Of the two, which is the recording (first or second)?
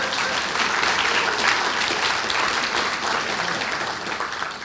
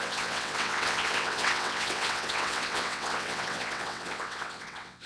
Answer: first